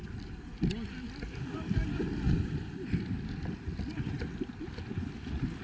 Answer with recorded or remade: recorded